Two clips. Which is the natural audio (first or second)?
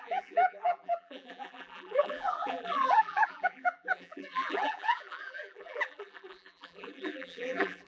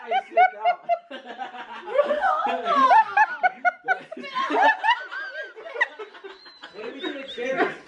second